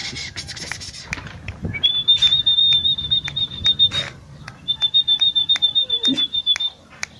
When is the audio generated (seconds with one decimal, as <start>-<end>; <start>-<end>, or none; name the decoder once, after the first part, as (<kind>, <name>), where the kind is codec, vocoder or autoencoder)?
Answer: 0.0-0.6 (vocoder, BigVGAN v2)

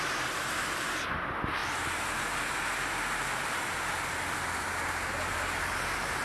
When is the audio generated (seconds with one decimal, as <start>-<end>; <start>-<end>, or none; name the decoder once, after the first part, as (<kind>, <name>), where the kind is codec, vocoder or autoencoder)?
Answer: none

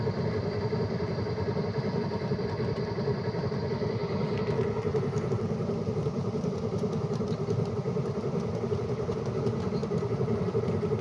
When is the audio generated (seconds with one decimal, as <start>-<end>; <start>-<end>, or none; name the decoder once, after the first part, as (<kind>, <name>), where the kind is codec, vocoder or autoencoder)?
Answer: none

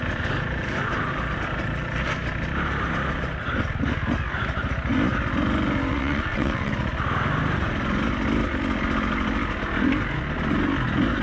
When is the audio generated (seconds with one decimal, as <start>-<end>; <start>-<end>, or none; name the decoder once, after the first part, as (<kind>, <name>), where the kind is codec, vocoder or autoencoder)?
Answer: 5.9-6.7 (vocoder, WaveNeXt)